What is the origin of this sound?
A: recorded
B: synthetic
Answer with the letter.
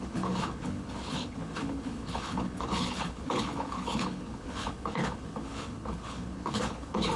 B